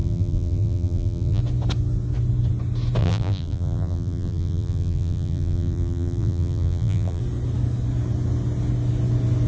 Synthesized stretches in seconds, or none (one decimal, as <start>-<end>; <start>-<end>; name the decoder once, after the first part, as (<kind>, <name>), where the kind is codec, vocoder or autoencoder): 0.0-1.4 (vocoder, BigVGAN v2); 3.0-7.2